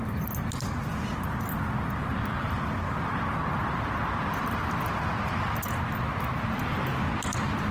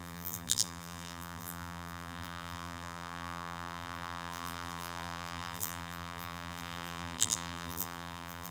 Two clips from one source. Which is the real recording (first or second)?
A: first